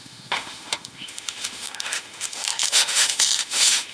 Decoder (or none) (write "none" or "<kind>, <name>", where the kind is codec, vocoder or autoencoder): autoencoder, DAC-VAE